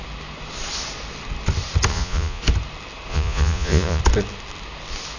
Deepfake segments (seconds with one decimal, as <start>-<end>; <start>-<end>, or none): 1.9-2.4; 3.1-4.0